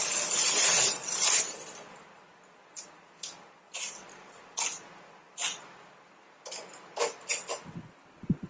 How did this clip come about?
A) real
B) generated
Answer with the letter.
A